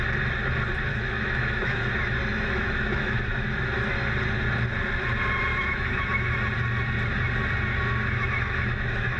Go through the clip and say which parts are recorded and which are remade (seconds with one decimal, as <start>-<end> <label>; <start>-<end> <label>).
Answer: 0.0-0.9 recorded; 0.9-1.9 remade; 1.9-2.3 recorded; 2.3-3.9 remade; 3.9-5.5 recorded; 5.5-6.3 remade; 6.3-7.7 recorded; 7.7-9.2 remade